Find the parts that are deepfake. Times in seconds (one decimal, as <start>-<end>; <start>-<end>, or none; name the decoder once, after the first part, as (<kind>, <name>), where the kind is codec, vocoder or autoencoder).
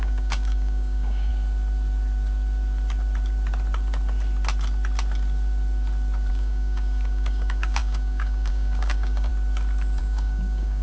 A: 0.0-1.3 (codec, DAC); 6.3-9.3; 10.0-10.8